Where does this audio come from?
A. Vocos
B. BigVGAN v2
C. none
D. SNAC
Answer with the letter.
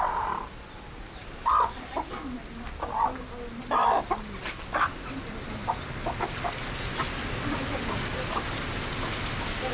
C